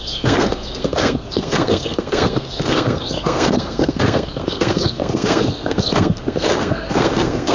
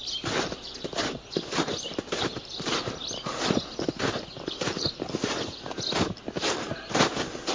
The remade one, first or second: first